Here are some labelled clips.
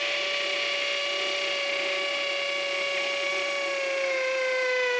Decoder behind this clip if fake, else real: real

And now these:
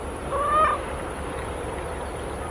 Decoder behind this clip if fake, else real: real